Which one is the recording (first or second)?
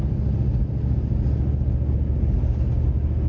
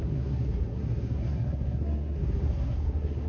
first